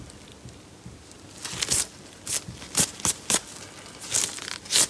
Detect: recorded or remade recorded